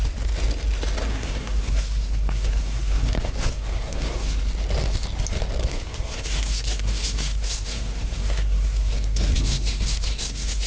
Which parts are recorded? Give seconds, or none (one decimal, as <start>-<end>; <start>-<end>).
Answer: 0.0-1.1; 4.4-5.6